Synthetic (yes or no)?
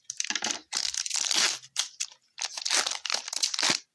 yes